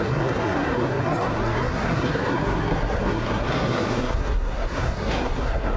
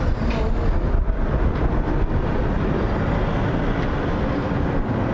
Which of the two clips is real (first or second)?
second